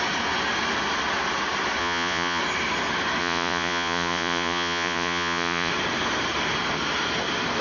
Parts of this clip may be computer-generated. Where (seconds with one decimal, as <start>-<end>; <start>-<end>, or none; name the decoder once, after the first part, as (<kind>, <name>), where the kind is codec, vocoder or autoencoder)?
1.8-2.4 (vocoder, Vocos); 3.2-5.7